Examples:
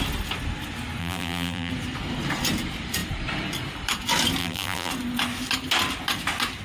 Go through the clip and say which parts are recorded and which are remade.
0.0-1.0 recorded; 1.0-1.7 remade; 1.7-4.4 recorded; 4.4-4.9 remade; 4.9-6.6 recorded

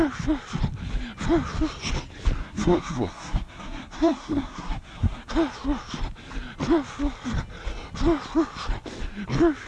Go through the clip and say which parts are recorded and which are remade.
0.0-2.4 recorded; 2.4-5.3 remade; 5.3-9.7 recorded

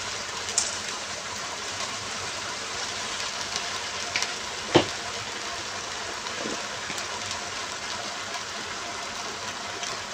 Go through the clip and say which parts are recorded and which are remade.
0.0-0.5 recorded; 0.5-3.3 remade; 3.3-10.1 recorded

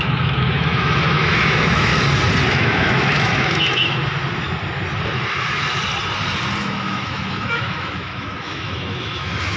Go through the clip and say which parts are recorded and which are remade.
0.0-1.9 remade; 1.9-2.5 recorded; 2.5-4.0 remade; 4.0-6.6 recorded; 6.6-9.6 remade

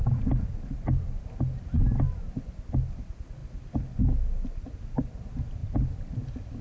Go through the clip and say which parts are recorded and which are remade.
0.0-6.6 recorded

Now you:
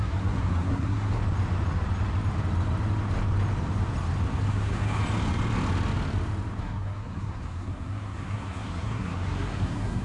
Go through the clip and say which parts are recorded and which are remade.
0.0-1.2 remade; 1.2-4.5 recorded; 4.5-5.0 remade; 5.0-6.6 recorded; 6.6-10.0 remade

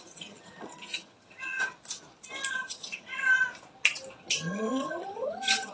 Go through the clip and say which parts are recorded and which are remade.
0.0-1.7 remade; 1.7-2.5 recorded; 2.5-3.3 remade; 3.3-4.2 recorded; 4.2-5.7 remade

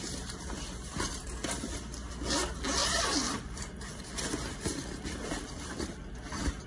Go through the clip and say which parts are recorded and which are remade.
0.0-1.4 recorded; 1.4-2.1 remade; 2.1-2.8 recorded; 2.8-3.6 remade; 3.6-6.7 recorded